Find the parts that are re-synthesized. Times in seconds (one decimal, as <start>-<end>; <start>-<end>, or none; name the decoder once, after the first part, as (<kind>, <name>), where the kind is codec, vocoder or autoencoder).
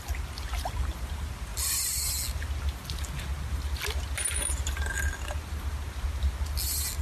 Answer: none